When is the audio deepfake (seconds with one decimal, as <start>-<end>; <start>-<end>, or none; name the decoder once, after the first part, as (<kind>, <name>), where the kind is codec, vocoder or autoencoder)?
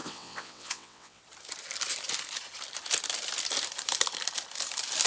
0.0-1.2 (vocoder, WaveNeXt)